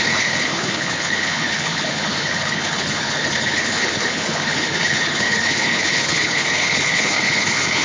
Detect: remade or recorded remade